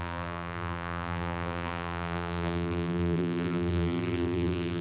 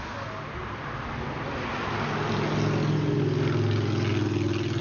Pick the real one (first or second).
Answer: second